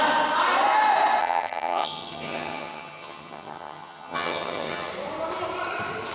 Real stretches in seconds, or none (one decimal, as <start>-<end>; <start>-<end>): 0.0-1.2; 4.9-6.1